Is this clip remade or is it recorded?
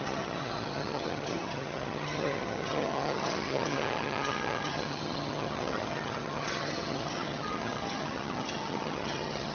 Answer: remade